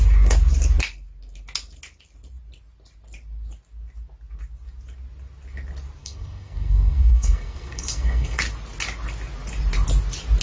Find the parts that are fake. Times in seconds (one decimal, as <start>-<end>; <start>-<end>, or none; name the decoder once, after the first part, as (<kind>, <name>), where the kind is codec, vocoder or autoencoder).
6.0-8.4 (codec, SNAC)